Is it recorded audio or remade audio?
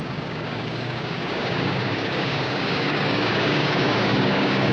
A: remade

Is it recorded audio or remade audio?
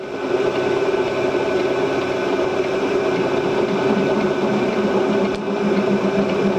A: recorded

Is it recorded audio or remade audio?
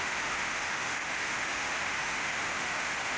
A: remade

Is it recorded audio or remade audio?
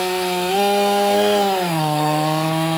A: remade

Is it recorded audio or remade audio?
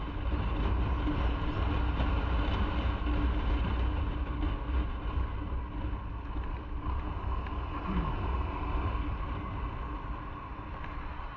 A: recorded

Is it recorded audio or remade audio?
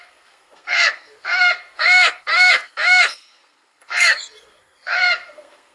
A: remade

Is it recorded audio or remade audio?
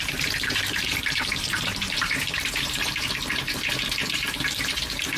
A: remade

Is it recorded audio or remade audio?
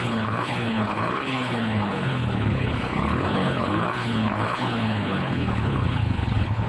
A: remade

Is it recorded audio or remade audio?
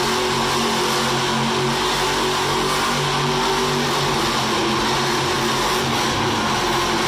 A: recorded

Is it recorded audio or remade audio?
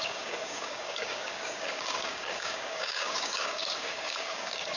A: remade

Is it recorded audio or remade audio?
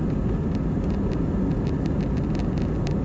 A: recorded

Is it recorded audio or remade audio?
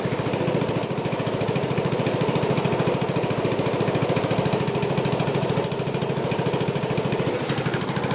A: recorded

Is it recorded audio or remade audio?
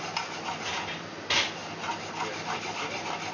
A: recorded